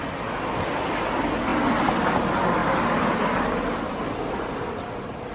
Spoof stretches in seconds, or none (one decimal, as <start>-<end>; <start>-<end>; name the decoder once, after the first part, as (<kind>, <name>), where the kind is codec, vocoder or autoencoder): none